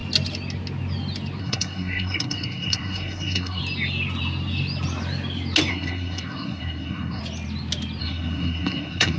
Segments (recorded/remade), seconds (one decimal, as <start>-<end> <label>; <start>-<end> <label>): 0.0-1.4 recorded; 1.4-3.6 remade; 3.6-5.7 recorded; 5.7-7.2 remade; 7.2-8.0 recorded; 8.0-9.2 remade